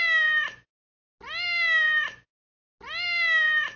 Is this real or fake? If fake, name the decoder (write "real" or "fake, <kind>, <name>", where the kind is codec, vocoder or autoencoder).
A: real